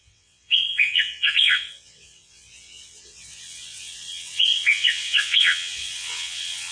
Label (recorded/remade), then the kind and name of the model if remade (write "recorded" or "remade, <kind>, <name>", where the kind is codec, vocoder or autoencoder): remade, vocoder, WaveNeXt